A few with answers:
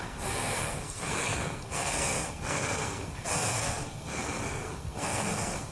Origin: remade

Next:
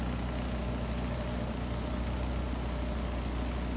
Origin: recorded